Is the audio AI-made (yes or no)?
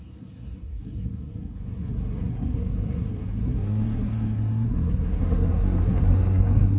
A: yes